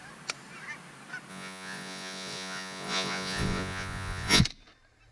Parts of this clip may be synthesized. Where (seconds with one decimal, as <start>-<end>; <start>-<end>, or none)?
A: 1.3-4.4